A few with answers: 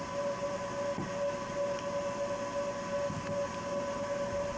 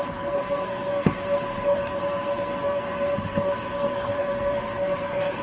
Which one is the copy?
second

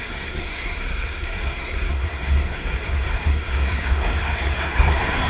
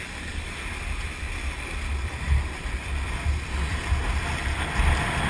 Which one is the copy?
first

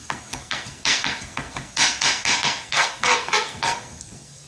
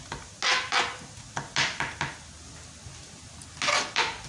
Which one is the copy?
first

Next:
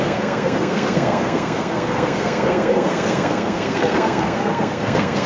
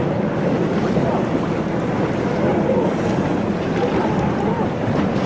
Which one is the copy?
first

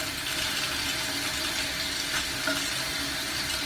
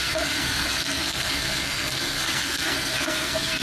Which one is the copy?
second